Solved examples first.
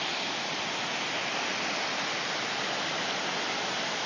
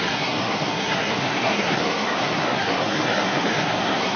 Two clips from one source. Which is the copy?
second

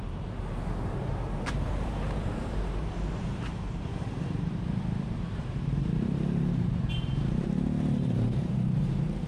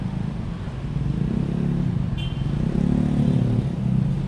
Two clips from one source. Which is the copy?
first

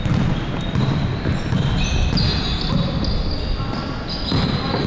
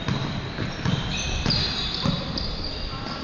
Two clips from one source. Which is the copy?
second